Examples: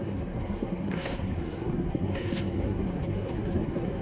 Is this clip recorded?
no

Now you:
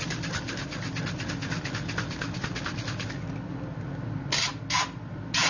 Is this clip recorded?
yes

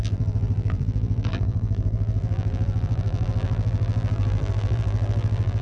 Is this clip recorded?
no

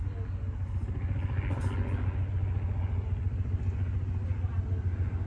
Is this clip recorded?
yes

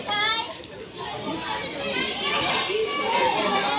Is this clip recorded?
yes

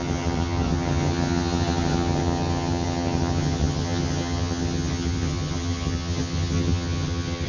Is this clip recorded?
no